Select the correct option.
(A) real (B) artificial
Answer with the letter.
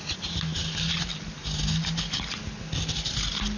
A